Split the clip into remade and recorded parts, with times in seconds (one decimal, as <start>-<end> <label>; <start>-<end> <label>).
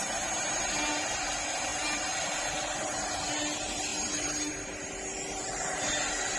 0.0-6.4 recorded